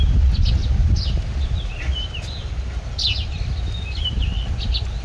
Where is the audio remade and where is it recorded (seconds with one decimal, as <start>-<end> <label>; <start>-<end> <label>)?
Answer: 0.0-5.0 recorded